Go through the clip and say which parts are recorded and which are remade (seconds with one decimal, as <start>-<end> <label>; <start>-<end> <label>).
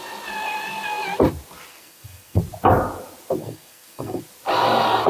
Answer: 0.0-1.7 recorded; 1.7-2.4 remade; 2.4-3.4 recorded; 3.4-4.2 remade; 4.2-5.1 recorded